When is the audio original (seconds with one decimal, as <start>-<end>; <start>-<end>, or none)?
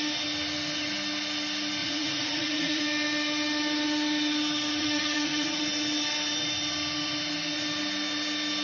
0.0-1.8; 2.8-4.8; 5.6-8.6